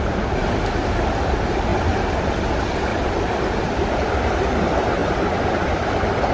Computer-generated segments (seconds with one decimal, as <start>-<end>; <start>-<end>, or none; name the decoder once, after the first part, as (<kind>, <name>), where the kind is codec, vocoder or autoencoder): none